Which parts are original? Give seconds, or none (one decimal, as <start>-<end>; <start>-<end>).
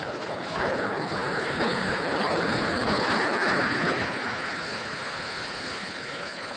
none